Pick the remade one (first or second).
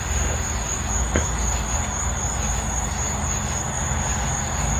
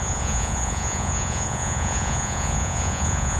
second